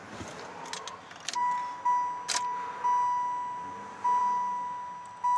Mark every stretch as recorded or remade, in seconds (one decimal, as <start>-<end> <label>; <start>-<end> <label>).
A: 0.0-5.4 recorded